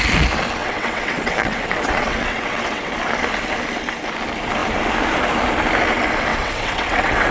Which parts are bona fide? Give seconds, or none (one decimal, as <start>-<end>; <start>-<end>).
0.0-0.6; 2.9-6.3